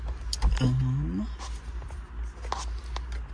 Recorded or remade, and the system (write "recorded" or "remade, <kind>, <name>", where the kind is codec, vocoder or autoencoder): recorded